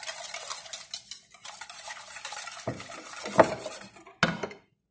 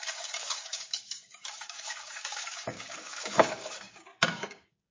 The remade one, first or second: second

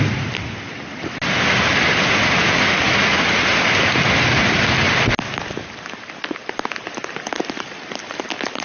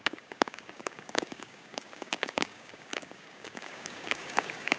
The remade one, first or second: second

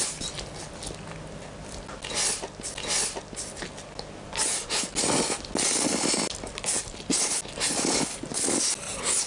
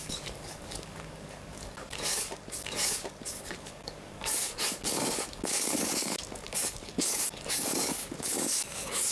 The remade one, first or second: second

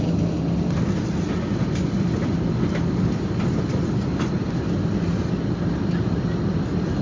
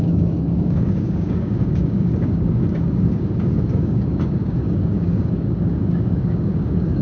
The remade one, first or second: second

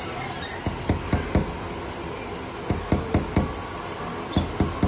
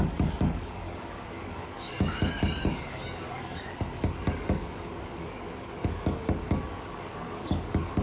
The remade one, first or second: second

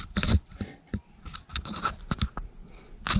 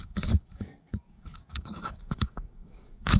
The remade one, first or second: second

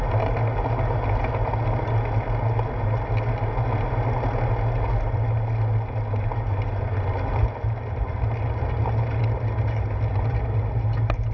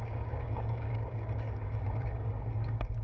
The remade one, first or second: second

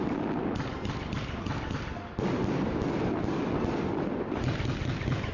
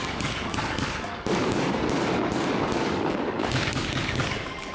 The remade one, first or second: second